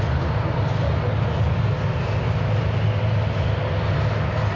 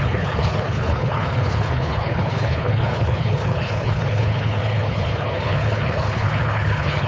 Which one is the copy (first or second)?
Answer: second